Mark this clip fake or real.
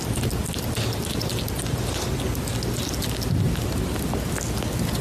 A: real